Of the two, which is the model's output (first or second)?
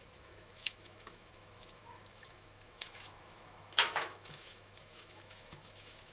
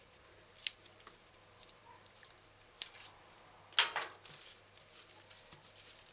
first